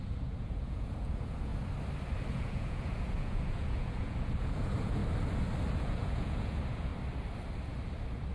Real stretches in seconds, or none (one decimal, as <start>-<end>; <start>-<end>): 1.5-2.3; 5.0-5.7; 6.9-8.3